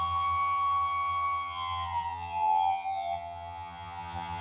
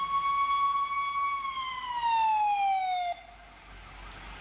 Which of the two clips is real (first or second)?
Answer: second